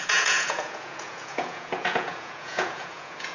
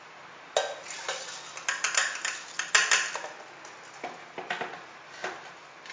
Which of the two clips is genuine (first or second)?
second